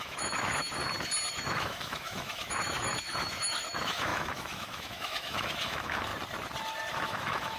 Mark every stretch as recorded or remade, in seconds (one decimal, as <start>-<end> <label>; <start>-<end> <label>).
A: 0.0-0.8 remade; 0.8-1.3 recorded; 1.3-6.1 remade; 6.1-6.9 recorded; 6.9-7.6 remade